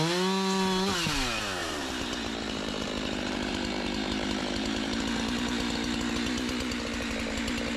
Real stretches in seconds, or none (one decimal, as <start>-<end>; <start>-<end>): 0.0-1.6; 5.0-7.8